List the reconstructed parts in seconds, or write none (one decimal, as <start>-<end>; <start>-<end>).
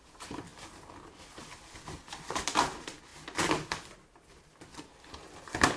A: none